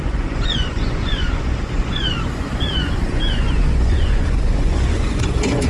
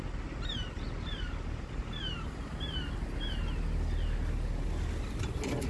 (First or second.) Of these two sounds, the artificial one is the first